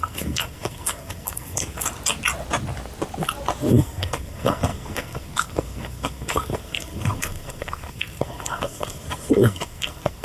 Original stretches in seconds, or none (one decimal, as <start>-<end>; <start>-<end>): 1.8-3.7